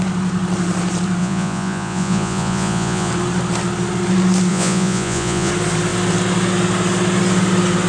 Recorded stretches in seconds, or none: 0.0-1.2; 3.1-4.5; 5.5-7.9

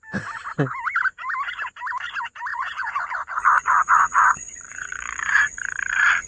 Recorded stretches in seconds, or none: 0.0-2.5; 3.0-3.6; 5.5-6.3

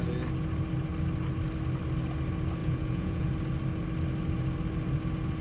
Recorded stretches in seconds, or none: 0.0-2.6; 3.3-5.4

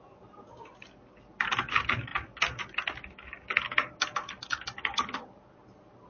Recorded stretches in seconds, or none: 0.0-6.1

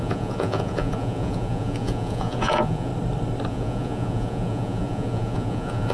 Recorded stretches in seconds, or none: 2.9-3.5

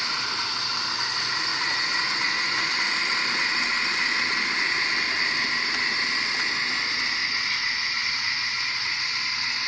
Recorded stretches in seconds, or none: 0.0-1.5; 2.7-7.2; 9.0-9.7

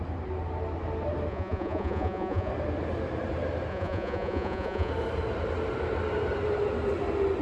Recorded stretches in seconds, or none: 0.0-1.3; 2.5-3.7; 4.9-7.4